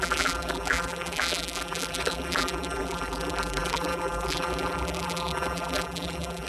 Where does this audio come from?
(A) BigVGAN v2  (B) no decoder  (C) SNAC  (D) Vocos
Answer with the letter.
A